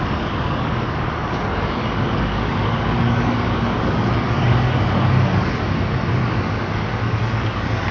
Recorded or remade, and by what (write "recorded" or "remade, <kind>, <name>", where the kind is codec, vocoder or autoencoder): remade, codec, DAC